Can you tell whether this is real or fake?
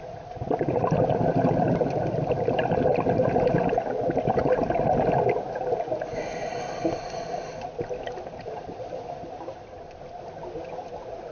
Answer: real